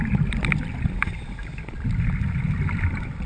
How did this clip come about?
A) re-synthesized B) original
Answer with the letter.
B